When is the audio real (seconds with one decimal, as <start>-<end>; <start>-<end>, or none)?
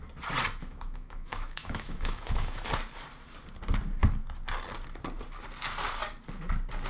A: 0.0-0.6; 2.7-6.9